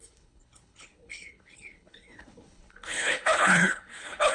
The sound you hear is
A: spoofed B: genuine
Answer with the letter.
A